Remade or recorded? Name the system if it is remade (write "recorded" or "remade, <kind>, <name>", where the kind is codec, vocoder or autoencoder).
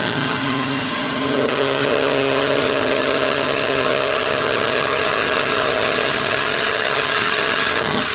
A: remade, vocoder, HiFi-GAN